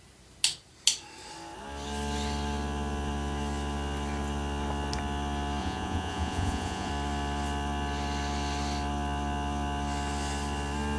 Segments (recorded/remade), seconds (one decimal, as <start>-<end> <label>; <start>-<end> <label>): 0.0-5.6 recorded; 5.6-6.9 remade; 6.9-11.0 recorded

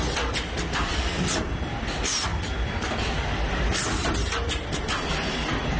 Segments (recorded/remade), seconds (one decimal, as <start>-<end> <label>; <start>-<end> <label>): 0.0-2.3 recorded; 2.3-4.1 remade; 4.1-5.8 recorded

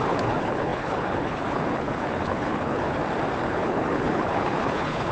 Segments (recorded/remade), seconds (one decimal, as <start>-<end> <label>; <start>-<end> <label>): 0.0-3.0 remade; 3.0-3.5 recorded; 3.5-5.1 remade

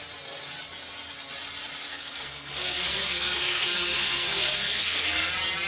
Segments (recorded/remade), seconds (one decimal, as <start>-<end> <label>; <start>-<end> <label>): 0.0-1.9 recorded; 1.9-5.3 remade; 5.3-5.7 recorded

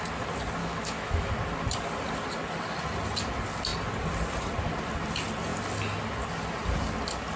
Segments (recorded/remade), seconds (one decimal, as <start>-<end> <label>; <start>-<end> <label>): 0.0-0.6 recorded; 0.6-1.3 remade; 1.3-7.4 recorded